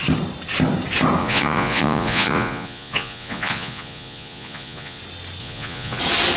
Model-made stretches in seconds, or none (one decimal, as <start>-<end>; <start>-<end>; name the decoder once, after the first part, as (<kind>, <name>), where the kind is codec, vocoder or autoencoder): 1.2-5.0 (vocoder, Vocos); 5.4-6.0